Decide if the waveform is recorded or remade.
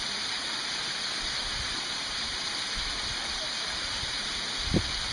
recorded